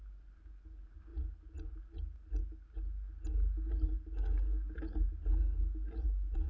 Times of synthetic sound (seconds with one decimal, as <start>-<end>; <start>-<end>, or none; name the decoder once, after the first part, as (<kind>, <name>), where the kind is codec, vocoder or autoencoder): none